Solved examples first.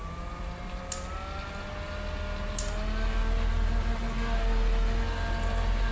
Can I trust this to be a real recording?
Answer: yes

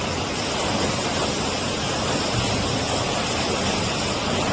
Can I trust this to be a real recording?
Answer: yes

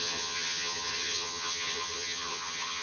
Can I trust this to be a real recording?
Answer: no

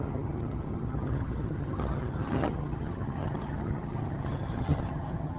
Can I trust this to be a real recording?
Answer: no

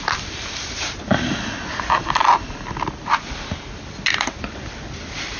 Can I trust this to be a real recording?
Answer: yes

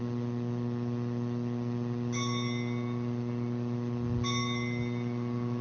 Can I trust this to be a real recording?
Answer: yes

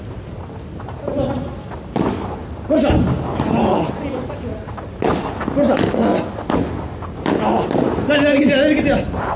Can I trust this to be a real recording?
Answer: yes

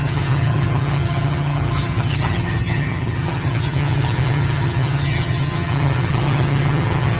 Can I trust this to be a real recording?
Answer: no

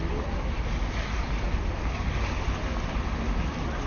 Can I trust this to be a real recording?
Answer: yes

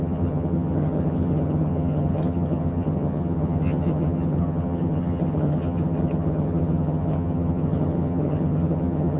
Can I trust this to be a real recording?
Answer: no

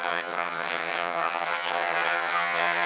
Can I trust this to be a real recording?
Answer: no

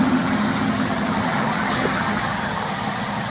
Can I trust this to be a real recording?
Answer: no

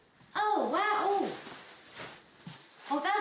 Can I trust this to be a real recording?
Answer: yes